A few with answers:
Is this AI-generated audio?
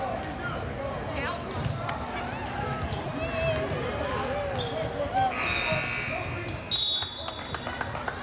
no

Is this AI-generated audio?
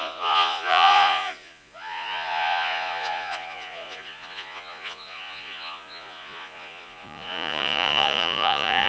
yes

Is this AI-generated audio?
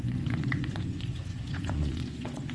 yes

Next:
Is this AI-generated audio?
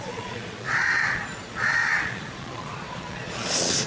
yes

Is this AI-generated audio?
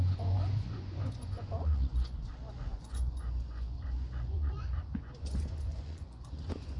yes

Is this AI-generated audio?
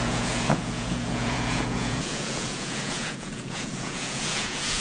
yes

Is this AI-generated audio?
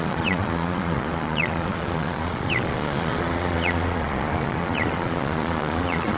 yes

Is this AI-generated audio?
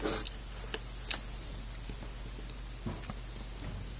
no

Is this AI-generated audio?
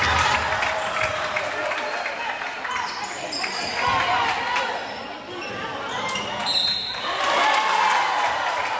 no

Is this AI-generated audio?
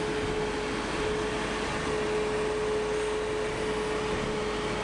no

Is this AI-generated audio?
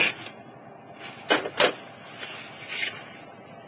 no